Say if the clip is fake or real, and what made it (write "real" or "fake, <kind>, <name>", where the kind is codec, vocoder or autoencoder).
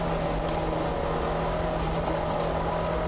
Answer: real